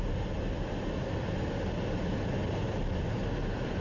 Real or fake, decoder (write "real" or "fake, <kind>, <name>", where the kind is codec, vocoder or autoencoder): real